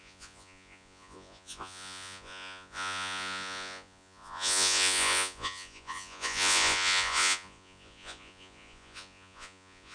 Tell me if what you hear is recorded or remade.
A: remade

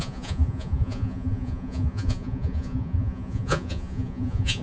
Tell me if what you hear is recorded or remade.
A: remade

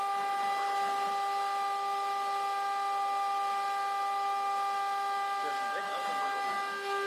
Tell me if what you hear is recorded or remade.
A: recorded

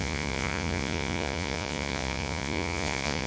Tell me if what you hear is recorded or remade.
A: remade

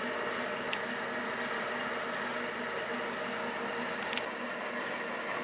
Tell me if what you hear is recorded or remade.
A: recorded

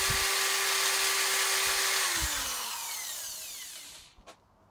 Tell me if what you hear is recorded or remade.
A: recorded